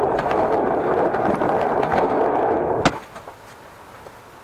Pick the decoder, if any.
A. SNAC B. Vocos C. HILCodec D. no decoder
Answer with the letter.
D